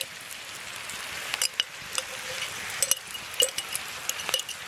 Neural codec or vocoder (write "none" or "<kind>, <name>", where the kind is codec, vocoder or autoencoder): none